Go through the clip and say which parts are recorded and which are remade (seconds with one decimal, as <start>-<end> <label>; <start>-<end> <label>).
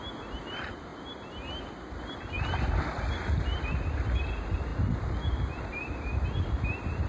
0.0-7.1 recorded